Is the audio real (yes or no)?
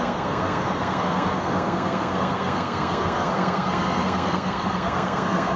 no